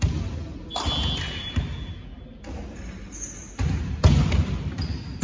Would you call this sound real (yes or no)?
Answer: yes